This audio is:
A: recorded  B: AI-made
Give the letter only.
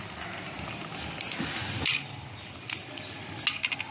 A